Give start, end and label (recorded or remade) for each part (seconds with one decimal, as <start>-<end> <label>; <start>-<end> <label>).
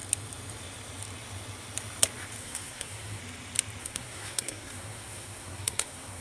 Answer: 0.0-2.4 recorded; 2.4-3.2 remade; 3.2-3.8 recorded; 3.8-6.2 remade